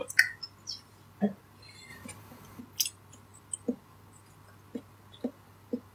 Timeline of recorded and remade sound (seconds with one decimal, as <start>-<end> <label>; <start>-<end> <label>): 0.0-1.9 recorded; 1.9-2.6 remade; 2.6-5.9 recorded